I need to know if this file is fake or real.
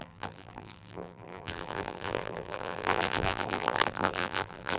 fake